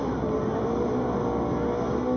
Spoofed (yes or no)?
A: no